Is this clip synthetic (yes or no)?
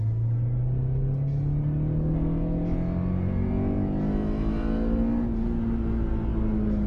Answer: no